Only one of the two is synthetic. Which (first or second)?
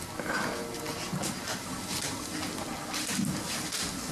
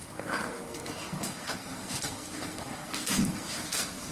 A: second